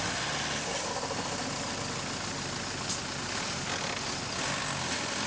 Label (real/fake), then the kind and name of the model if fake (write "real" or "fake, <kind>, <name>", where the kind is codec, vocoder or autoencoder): real